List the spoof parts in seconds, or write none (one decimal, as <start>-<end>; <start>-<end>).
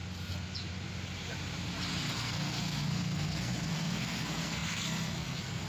2.1-5.7